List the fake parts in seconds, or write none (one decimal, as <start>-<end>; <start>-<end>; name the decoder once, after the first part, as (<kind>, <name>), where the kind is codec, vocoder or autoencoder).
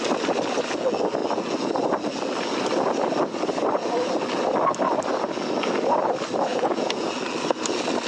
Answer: 6.5-7.1 (vocoder, Vocos)